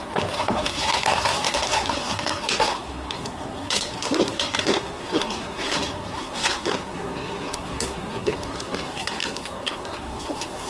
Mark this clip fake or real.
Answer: fake